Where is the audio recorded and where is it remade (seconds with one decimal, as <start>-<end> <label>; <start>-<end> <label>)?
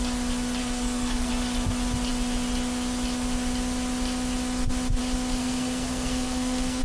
0.0-0.6 recorded; 0.6-1.3 remade; 1.3-5.4 recorded; 5.4-6.8 remade